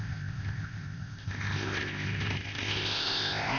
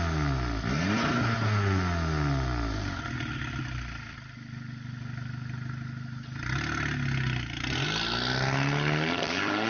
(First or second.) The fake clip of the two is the first